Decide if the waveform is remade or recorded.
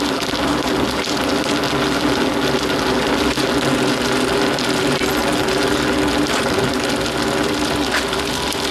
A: recorded